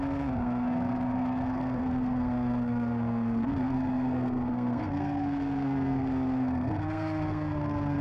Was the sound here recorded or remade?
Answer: remade